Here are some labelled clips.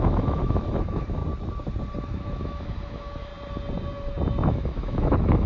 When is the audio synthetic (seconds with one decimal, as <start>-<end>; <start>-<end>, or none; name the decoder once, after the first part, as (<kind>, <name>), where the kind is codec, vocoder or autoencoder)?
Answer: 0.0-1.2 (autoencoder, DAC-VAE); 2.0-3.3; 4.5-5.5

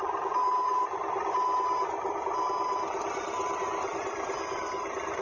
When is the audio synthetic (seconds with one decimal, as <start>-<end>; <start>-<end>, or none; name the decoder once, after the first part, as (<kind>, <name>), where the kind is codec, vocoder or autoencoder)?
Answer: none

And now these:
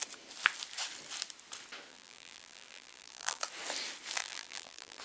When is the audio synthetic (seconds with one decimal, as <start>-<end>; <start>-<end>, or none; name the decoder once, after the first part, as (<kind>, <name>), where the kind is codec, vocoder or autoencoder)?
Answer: 1.9-3.4 (vocoder, BigVGAN v2); 4.2-5.0